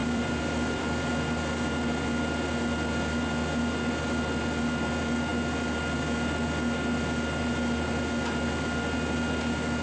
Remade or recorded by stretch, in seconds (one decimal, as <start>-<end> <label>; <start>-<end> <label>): 0.0-1.1 remade; 1.1-9.8 recorded